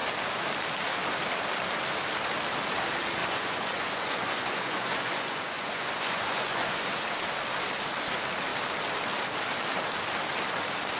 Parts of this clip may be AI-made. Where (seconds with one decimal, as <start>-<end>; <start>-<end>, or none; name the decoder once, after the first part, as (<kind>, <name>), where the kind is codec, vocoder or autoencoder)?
3.2-7.0 (vocoder, Vocos)